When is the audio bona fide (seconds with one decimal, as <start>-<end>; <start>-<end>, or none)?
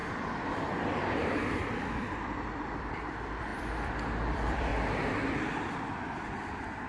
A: 4.7-5.6